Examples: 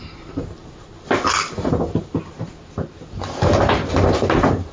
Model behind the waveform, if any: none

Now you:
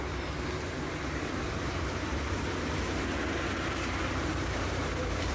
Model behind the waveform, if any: vocoder, BigVGAN v2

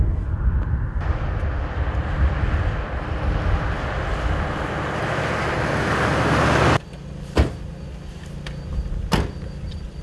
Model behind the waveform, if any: none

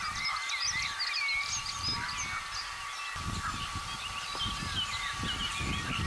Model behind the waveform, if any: none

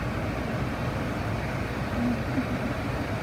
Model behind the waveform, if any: none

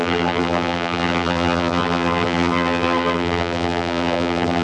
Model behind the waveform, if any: vocoder, BigVGAN v2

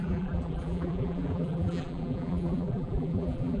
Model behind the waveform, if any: vocoder, BigVGAN v2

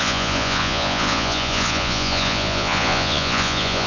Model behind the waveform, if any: vocoder, Vocos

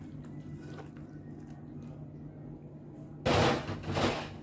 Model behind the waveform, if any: none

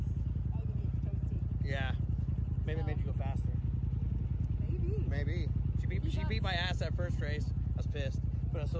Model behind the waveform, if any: none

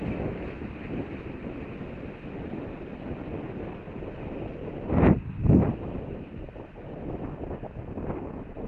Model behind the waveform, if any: none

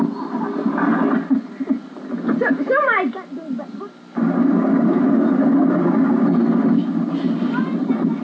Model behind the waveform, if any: none